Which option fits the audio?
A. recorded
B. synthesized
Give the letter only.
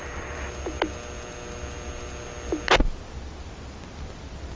A